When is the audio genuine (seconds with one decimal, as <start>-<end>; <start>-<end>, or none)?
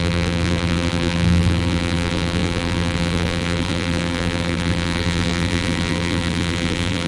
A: none